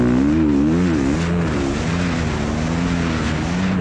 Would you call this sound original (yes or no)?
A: yes